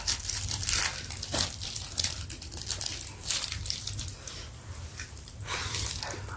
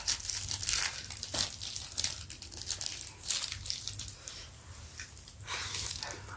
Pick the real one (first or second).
second